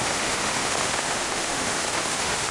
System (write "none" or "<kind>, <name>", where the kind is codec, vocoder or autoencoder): autoencoder, DAC-VAE